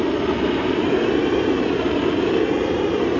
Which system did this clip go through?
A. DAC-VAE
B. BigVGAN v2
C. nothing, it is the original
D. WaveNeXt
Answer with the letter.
B